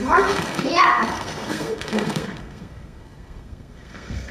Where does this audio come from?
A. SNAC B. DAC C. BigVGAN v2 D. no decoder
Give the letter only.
A